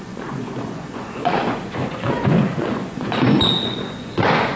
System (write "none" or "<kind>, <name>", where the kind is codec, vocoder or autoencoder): vocoder, Vocos